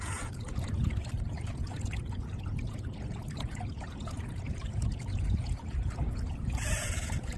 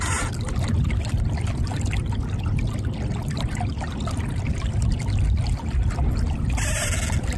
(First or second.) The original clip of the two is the second